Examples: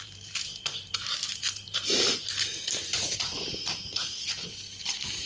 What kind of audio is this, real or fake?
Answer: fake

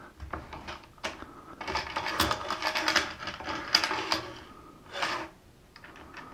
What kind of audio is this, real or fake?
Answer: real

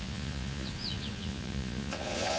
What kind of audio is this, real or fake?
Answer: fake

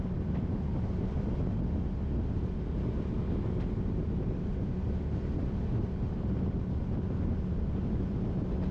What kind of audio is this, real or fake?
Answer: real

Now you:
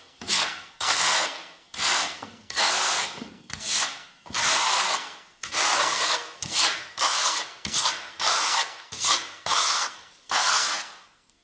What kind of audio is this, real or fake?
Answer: fake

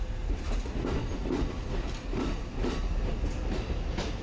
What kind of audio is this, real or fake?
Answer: real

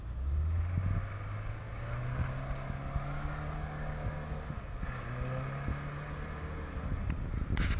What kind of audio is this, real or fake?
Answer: real